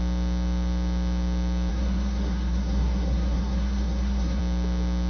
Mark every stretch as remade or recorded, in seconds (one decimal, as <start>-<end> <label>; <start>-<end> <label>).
0.0-1.7 recorded; 1.7-4.4 remade; 4.4-5.1 recorded